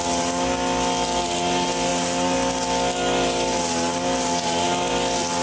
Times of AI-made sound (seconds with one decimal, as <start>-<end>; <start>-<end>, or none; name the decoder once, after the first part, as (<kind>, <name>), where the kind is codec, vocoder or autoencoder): none